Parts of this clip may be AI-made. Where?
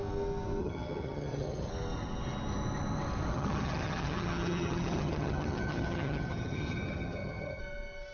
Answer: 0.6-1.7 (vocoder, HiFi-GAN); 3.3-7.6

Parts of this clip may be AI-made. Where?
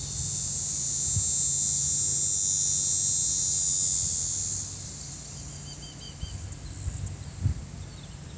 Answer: none